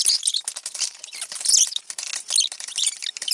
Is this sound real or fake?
real